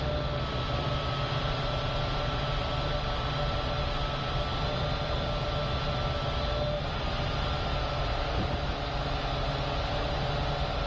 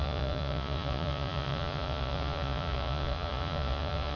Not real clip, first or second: second